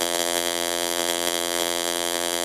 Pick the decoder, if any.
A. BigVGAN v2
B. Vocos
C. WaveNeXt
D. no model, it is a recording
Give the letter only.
A